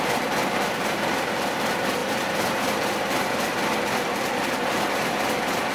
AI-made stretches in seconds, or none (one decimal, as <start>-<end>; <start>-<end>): 2.0-5.7